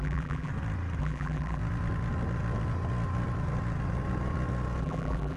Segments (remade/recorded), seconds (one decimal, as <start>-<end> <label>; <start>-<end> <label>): 0.0-0.5 remade; 0.5-1.0 recorded; 1.0-1.6 remade; 1.6-4.8 recorded; 4.8-5.4 remade